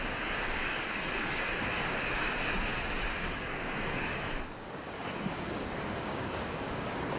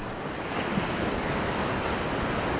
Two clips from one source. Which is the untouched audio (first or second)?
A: second